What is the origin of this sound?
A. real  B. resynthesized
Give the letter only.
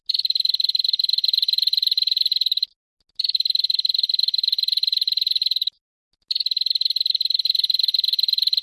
A